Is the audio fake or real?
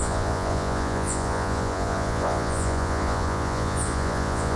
fake